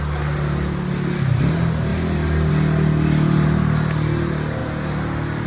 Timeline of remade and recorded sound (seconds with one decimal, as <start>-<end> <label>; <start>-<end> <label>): 0.0-5.5 recorded